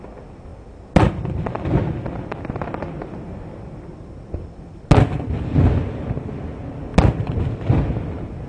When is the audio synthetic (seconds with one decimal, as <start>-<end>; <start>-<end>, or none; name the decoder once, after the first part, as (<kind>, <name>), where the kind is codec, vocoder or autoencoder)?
none